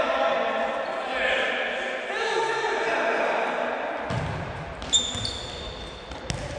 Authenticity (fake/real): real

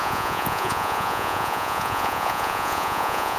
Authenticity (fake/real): fake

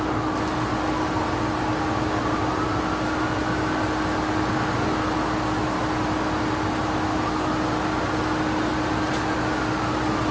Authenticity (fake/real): real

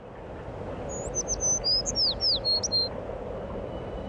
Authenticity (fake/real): real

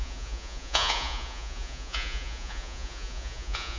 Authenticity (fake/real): fake